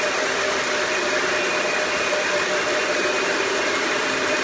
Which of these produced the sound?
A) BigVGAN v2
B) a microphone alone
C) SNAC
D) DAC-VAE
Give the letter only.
A